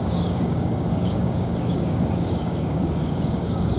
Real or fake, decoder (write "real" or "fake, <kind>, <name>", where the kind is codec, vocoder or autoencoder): fake, codec, DAC